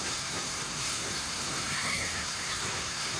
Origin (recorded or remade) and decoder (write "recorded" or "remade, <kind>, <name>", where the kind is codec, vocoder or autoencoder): remade, codec, SNAC